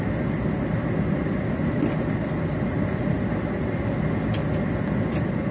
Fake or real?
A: real